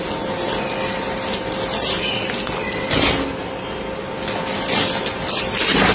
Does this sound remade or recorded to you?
recorded